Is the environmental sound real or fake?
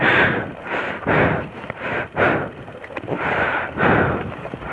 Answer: fake